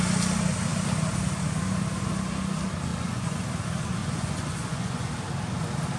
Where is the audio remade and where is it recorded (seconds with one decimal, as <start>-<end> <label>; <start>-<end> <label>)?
0.0-2.9 recorded; 2.9-3.4 remade; 3.4-4.0 recorded; 4.0-5.1 remade; 5.1-6.0 recorded